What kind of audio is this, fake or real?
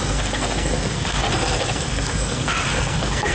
fake